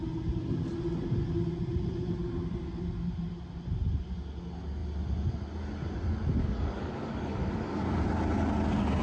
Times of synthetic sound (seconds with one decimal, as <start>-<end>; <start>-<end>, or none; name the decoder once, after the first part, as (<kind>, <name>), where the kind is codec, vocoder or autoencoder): 6.4-8.0 (codec, DAC)